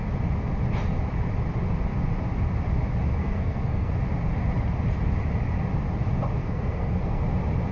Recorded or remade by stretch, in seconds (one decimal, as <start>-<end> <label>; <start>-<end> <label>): 0.0-3.2 recorded; 3.2-3.9 remade; 3.9-6.4 recorded; 6.4-7.2 remade; 7.2-7.7 recorded